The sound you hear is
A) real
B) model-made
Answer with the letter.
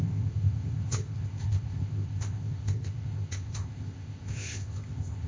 B